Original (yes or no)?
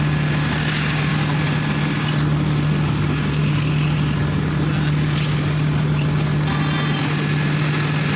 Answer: yes